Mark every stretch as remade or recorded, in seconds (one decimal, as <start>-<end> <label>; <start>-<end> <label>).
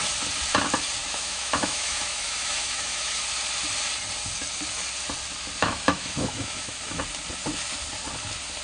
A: 0.0-1.0 recorded; 1.0-3.2 remade; 3.2-5.6 recorded; 5.6-7.0 remade; 7.0-8.6 recorded